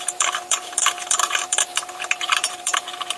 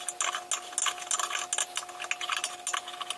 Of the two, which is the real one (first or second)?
second